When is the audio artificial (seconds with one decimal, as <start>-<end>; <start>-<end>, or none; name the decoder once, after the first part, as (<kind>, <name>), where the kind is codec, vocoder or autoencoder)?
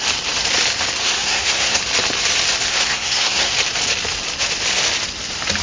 1.0-1.8 (codec, SNAC); 2.7-3.5